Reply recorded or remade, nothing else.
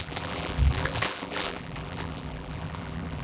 remade